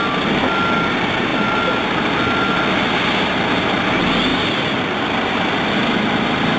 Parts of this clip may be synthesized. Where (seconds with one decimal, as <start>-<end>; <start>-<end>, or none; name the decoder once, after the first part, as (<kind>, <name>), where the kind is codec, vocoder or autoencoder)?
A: none